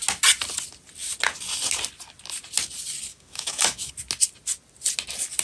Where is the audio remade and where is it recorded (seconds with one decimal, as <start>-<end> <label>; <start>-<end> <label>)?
0.0-3.1 recorded; 3.1-3.9 remade; 3.9-5.4 recorded